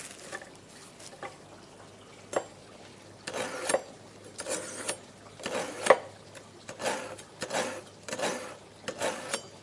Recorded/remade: recorded